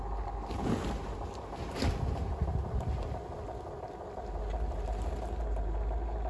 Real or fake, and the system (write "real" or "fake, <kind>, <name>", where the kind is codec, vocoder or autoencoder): real